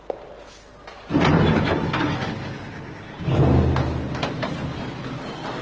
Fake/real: real